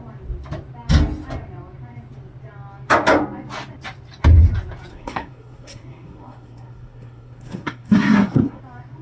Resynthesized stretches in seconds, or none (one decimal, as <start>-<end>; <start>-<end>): 4.9-8.6